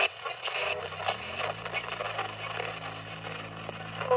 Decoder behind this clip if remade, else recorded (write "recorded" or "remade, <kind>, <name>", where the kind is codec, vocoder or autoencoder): recorded